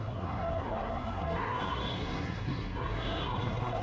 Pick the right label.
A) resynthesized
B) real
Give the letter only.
A